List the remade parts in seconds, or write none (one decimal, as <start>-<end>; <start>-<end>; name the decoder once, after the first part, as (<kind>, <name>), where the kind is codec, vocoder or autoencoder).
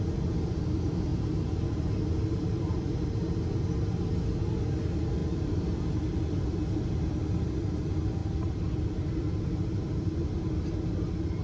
none